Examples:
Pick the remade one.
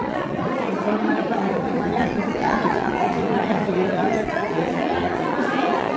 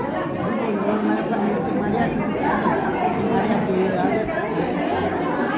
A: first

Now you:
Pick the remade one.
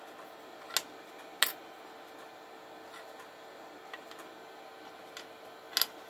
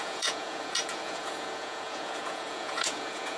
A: second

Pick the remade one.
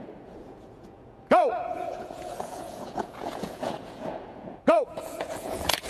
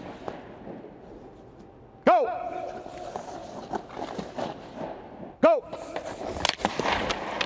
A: first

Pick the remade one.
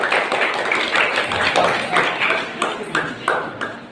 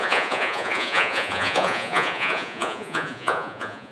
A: second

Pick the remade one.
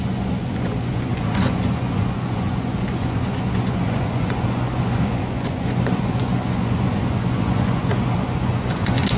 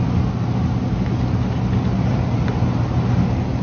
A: first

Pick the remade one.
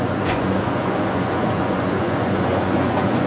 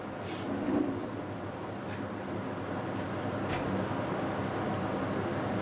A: first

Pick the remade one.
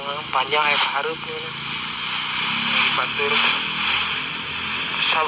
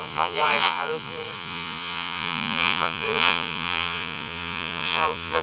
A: second